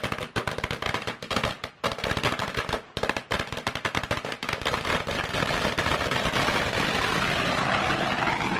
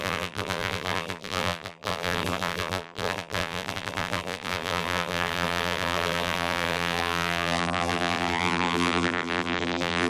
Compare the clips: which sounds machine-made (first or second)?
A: second